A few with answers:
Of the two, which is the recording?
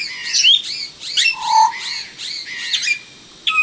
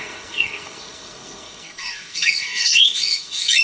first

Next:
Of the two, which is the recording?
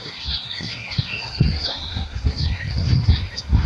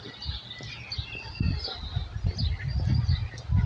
second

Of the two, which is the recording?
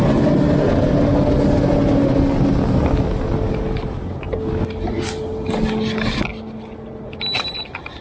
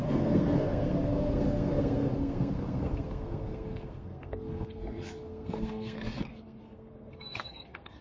first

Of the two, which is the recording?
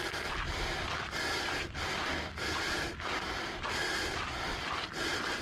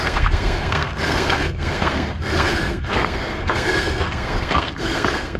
first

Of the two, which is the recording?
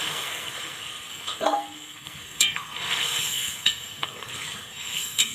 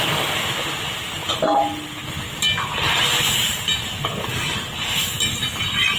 second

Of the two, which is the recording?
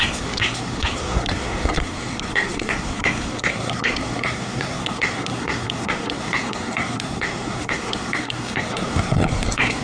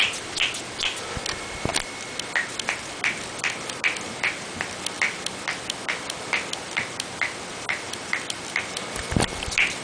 second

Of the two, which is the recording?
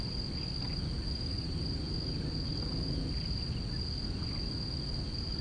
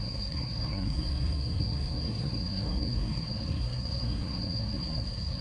first